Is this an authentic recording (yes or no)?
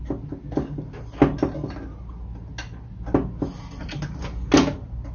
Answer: yes